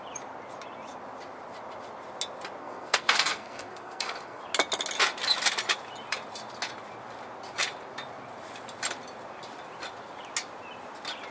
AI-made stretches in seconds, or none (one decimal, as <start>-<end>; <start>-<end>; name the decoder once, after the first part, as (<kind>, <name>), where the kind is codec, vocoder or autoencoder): 2.6-4.4 (codec, SNAC)